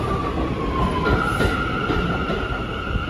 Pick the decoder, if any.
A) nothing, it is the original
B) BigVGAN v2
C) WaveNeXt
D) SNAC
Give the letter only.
A